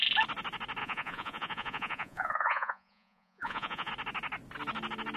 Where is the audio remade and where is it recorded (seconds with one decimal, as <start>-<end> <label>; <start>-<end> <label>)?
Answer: 0.0-0.8 recorded; 0.8-3.9 remade; 3.9-5.2 recorded

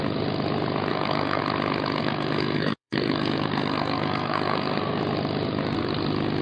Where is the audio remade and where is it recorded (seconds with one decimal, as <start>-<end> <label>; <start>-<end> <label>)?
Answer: 0.0-0.9 recorded; 0.9-1.4 remade; 1.4-2.0 recorded; 2.0-5.0 remade; 5.0-6.4 recorded